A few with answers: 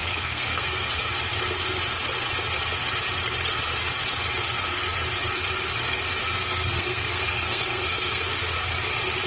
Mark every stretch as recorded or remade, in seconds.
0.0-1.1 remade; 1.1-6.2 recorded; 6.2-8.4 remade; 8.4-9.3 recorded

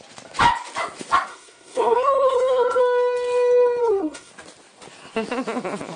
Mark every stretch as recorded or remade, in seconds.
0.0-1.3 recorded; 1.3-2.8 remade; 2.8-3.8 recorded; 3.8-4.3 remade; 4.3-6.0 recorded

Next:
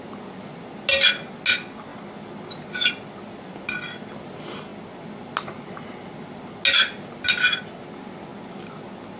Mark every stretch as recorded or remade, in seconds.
0.0-9.2 recorded